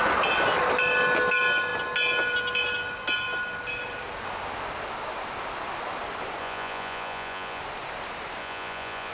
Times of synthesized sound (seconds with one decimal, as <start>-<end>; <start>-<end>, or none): 6.4-7.6; 8.4-9.1